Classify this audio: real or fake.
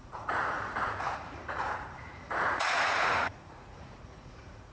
fake